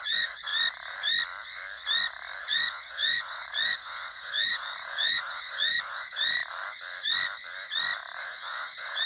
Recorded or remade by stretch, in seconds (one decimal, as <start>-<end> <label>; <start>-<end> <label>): 0.0-0.5 remade; 0.5-2.4 recorded; 2.4-6.4 remade; 6.4-8.2 recorded; 8.2-9.1 remade